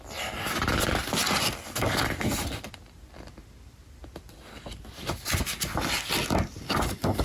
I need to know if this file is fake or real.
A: real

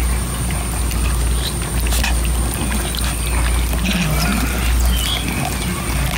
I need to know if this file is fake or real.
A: real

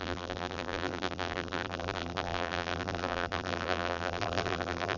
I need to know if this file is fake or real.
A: fake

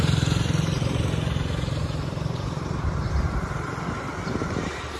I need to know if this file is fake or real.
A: fake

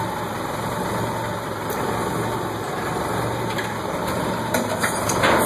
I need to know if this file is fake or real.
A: fake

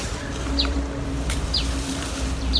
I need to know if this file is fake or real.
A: fake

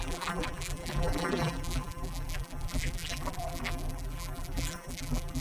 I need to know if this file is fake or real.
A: fake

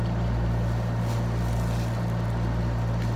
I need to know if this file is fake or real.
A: real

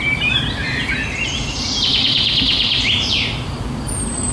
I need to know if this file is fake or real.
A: fake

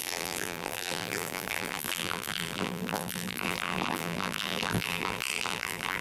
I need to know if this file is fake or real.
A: fake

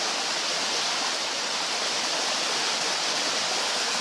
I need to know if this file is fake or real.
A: fake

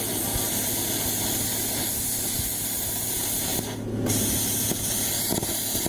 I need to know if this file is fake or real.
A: real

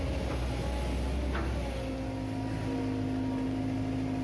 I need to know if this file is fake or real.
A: real